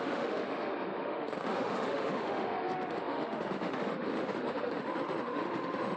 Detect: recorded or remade remade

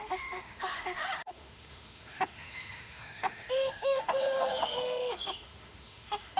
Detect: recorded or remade remade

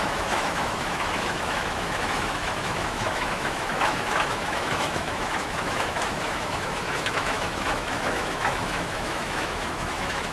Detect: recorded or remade remade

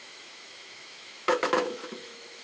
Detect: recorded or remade remade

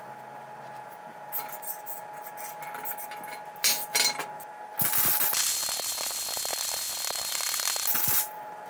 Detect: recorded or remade recorded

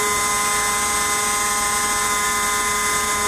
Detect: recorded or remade recorded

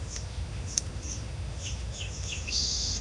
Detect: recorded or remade remade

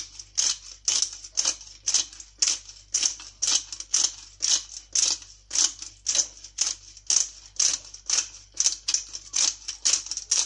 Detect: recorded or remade recorded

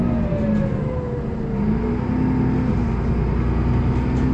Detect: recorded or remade recorded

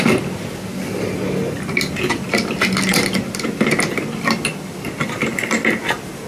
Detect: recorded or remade recorded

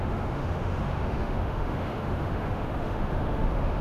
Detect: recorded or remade remade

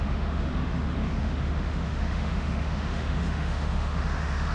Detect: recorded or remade remade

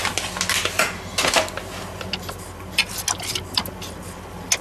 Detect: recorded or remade recorded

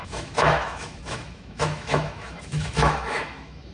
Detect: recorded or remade remade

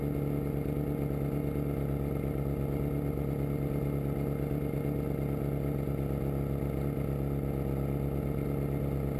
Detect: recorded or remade recorded